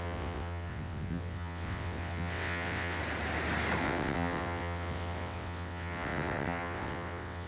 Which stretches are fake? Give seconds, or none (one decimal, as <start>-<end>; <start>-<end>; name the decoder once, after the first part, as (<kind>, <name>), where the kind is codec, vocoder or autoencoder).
0.0-3.0 (vocoder, WaveNeXt); 3.8-7.5